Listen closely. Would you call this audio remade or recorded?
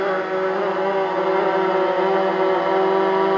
recorded